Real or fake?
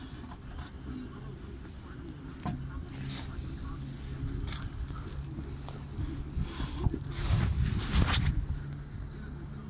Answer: real